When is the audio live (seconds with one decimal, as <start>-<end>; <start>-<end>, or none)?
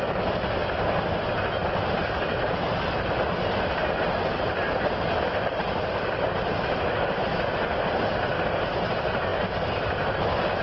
0.0-10.6